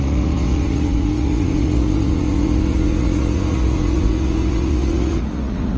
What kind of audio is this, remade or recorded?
remade